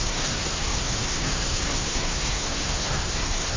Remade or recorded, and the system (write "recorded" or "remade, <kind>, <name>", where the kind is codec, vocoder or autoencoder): remade, codec, SNAC